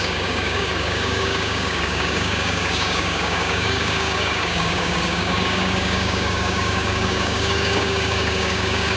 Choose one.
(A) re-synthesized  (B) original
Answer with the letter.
A